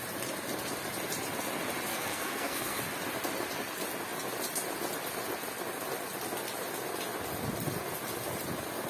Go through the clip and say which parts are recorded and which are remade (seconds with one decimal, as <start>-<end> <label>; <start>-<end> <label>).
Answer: 0.0-1.9 recorded; 1.9-2.8 remade; 2.8-8.9 recorded